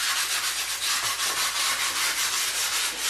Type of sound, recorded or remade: recorded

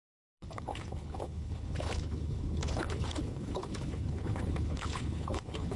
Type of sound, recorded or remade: remade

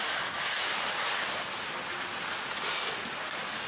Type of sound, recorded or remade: recorded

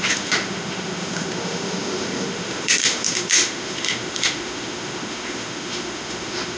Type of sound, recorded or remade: remade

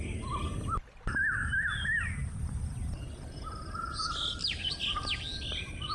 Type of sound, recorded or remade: recorded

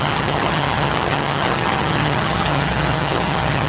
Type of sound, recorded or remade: remade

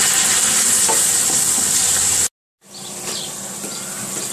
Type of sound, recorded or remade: recorded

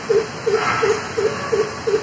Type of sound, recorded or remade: recorded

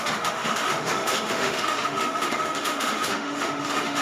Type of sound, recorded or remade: remade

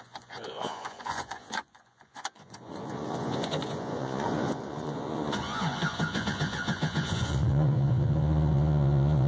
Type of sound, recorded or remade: remade